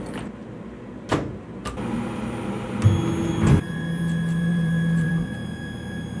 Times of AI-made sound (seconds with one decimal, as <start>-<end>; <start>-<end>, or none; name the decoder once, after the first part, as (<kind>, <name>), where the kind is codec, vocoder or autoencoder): 4.5-5.1 (vocoder, BigVGAN v2)